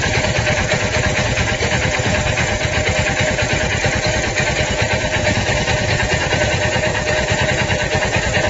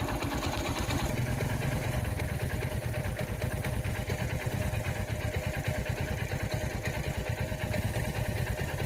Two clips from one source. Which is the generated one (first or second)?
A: first